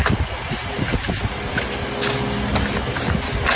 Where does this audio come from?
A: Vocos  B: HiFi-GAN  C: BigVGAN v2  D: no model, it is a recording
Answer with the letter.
D